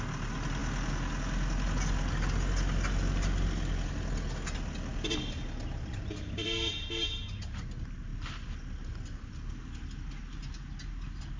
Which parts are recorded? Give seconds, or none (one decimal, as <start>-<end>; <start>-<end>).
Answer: 0.0-11.4